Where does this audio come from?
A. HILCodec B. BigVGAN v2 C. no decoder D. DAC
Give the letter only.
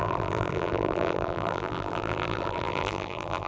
B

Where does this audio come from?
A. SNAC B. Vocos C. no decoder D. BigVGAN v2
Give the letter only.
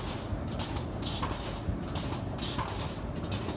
C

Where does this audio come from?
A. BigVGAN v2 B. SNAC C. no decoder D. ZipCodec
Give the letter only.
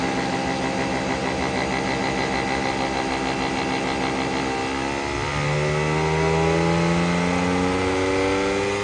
C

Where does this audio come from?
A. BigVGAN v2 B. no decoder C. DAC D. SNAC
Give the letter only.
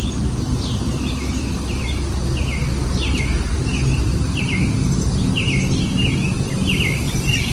B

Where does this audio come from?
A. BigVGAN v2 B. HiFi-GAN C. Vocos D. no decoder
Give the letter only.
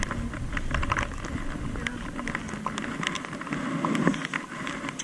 D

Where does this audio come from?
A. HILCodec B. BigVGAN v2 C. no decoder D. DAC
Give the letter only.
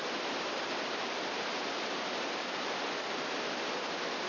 B